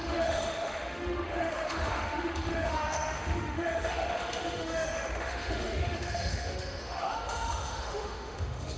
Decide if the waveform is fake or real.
fake